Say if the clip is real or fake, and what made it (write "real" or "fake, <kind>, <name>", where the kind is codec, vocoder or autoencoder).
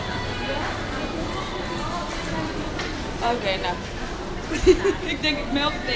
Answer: real